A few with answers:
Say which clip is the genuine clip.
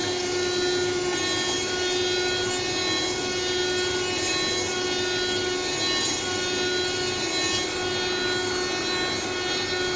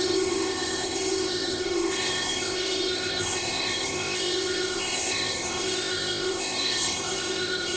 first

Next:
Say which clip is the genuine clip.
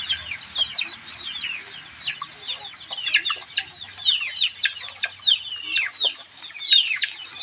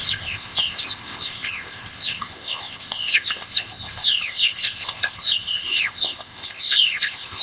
first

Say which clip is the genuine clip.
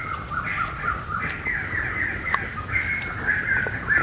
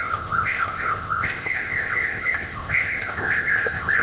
first